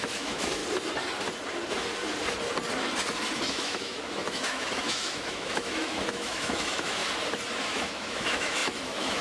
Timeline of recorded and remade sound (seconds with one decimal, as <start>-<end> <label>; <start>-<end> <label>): 0.0-0.6 remade; 0.6-3.5 recorded; 3.5-7.0 remade; 7.0-7.6 recorded; 7.6-9.2 remade